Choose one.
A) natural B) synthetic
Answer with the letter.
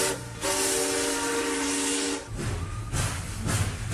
A